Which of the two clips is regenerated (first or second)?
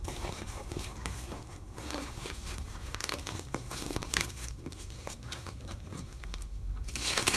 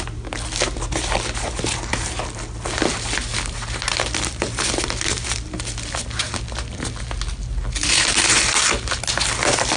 first